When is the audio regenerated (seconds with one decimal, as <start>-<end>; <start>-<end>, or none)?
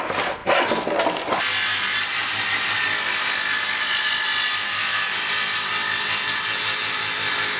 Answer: none